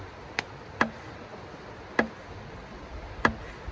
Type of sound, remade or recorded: recorded